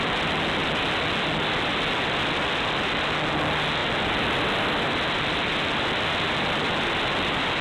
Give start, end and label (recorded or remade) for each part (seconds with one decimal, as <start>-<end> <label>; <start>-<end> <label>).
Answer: 0.0-7.6 recorded